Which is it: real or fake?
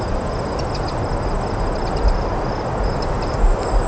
real